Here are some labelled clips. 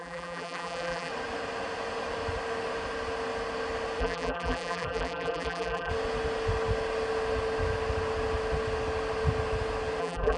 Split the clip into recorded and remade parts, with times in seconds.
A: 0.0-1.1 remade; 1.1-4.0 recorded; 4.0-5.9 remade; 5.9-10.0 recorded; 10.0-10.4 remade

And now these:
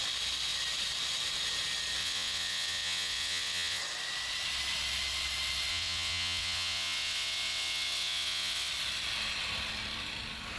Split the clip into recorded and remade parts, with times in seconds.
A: 0.0-2.0 recorded; 2.0-3.8 remade; 3.8-5.7 recorded; 5.7-8.7 remade; 8.7-10.6 recorded